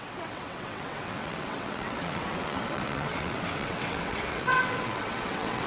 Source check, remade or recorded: remade